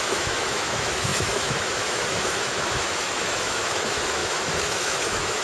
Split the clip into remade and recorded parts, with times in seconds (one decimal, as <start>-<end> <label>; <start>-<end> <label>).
0.0-5.4 remade